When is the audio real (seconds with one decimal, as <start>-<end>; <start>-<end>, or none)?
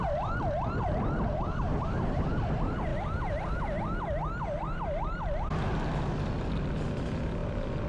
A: 0.0-7.9